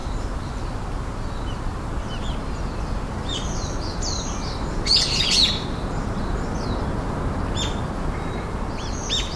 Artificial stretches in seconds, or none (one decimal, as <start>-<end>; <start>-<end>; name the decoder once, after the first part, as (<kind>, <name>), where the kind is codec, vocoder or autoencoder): none